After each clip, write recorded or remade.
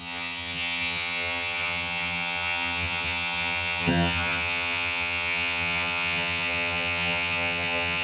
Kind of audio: remade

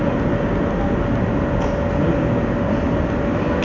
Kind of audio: recorded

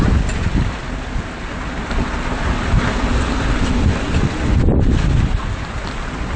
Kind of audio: recorded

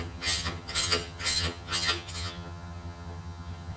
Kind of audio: remade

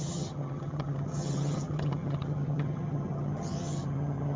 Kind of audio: remade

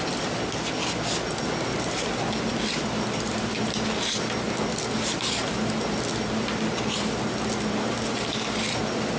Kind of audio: recorded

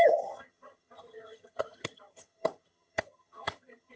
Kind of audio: remade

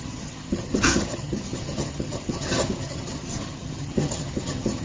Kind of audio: remade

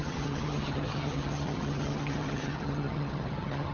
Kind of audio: remade